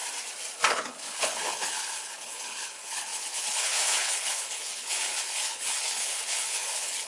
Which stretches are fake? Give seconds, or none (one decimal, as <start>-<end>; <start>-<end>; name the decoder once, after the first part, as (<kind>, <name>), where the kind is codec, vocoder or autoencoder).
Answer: 0.7-7.1 (codec, HILCodec)